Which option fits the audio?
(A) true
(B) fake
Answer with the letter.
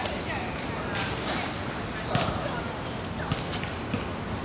A